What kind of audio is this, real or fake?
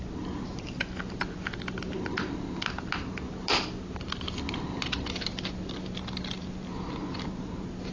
real